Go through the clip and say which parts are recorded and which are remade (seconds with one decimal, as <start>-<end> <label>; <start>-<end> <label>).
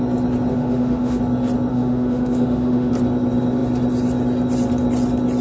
0.0-0.5 recorded; 0.5-1.2 remade; 1.2-1.7 recorded; 1.7-2.9 remade; 2.9-5.4 recorded